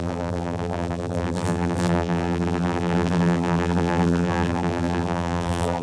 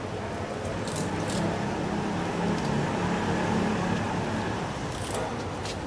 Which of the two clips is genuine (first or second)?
second